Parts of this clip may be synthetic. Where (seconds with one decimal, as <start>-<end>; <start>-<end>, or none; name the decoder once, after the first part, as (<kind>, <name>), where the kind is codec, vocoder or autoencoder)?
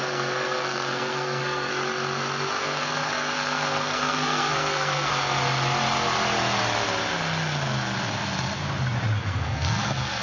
0.0-1.7 (codec, SNAC); 2.6-5.1; 9.2-10.2